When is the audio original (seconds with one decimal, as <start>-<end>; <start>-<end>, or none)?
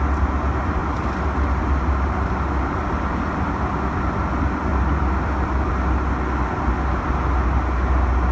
0.0-0.8; 1.6-4.7; 5.7-8.3